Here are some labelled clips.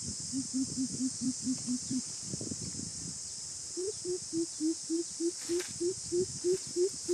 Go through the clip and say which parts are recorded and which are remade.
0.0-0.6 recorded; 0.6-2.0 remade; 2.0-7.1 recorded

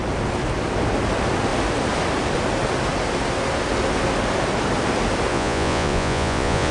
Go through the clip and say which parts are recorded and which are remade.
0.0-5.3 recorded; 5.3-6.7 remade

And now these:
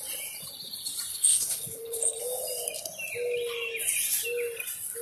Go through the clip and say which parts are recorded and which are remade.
0.0-1.1 recorded; 1.1-2.2 remade; 2.2-5.0 recorded

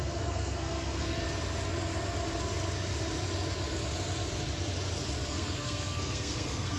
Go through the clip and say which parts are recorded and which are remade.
0.0-1.2 remade; 1.2-5.3 recorded; 5.3-6.8 remade

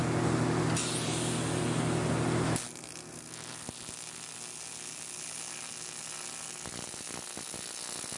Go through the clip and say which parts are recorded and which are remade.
0.0-8.2 recorded

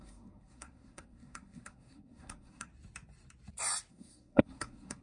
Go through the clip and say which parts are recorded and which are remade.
0.0-2.7 remade; 2.7-3.9 recorded; 3.9-5.0 remade